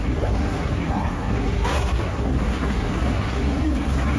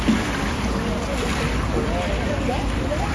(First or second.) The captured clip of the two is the second